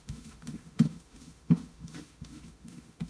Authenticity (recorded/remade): remade